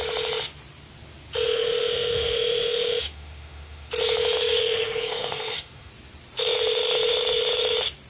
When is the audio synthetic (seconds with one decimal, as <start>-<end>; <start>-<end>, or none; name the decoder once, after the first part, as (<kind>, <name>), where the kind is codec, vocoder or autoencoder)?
1.5-3.9 (autoencoder, DAC-VAE); 4.6-5.9